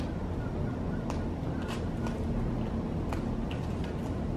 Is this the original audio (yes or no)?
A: yes